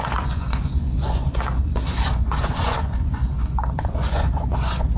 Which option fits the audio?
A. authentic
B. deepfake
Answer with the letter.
B